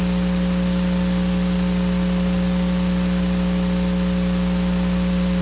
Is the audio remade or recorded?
recorded